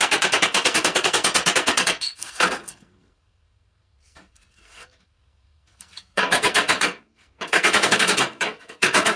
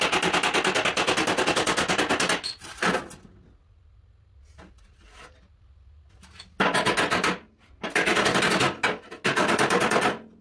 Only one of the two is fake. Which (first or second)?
first